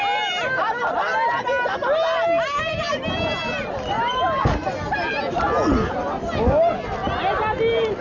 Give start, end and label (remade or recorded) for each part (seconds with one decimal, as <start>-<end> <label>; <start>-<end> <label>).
0.0-8.0 recorded